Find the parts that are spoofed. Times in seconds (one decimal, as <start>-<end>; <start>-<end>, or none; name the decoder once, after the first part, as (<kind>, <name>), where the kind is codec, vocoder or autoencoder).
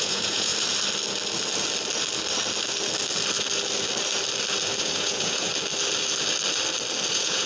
0.0-0.5 (vocoder, Vocos); 4.8-5.5; 7.1-7.5